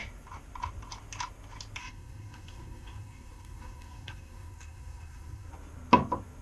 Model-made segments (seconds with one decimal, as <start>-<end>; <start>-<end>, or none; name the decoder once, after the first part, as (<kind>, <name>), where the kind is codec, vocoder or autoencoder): 1.8-5.5 (codec, SNAC)